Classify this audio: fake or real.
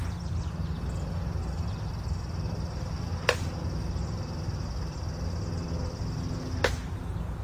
real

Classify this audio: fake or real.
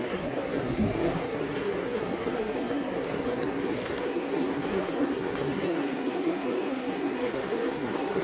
fake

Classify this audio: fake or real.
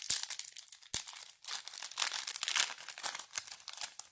real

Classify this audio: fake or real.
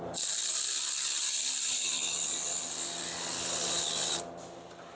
real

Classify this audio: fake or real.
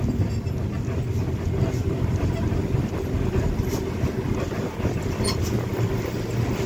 real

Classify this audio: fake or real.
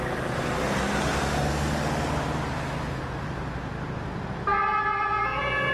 real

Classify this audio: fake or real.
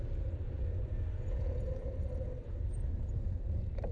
real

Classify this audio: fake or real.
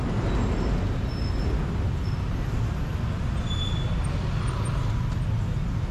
real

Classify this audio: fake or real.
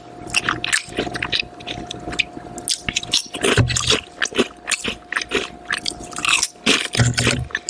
real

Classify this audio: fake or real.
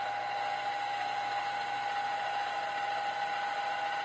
real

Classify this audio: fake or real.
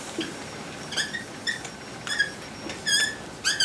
real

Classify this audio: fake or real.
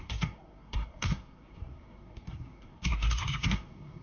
fake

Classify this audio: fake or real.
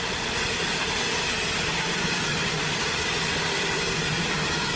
real